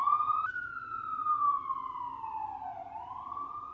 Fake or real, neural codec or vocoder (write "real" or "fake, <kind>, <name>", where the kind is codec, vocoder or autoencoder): real